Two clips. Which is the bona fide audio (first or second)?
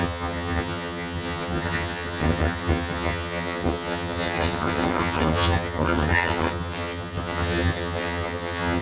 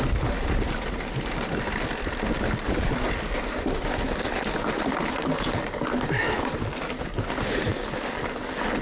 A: second